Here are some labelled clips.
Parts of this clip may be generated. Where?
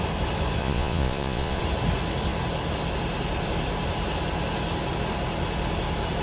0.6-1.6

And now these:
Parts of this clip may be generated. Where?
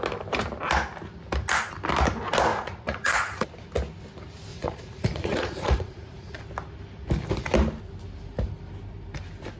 2.5-3.5; 4.5-6.4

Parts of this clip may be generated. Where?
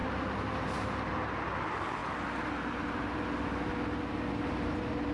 none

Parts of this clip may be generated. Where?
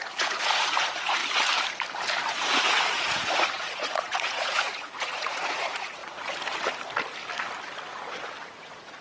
0.0-1.2; 2.3-6.0; 8.6-9.0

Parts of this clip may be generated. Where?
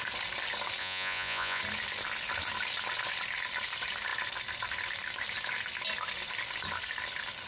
0.8-1.6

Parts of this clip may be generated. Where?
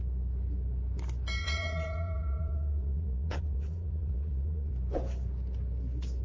1.4-4.7